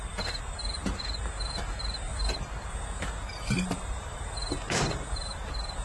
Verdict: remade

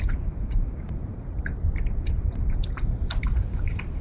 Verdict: remade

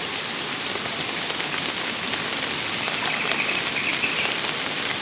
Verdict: recorded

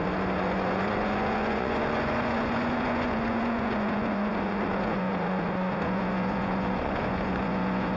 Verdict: remade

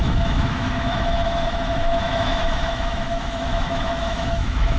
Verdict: remade